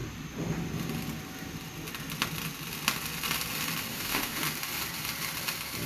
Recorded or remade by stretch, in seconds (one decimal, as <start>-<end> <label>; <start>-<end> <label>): 0.0-3.9 recorded; 3.9-4.4 remade; 4.4-5.9 recorded